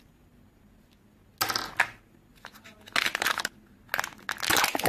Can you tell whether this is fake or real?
real